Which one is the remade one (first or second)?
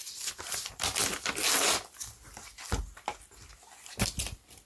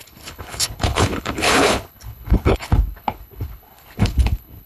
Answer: second